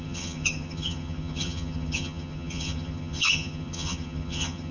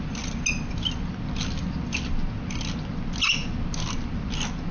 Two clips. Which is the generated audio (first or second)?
first